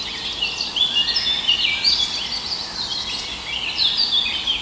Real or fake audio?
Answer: real